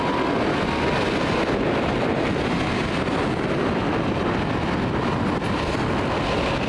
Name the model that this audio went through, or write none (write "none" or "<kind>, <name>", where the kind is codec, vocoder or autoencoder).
none